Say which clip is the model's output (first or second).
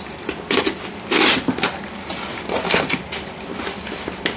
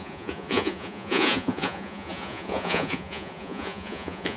second